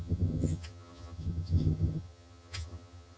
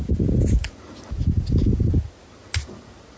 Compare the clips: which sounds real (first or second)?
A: second